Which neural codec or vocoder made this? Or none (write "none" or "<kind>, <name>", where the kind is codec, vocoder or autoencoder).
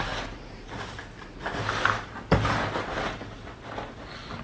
none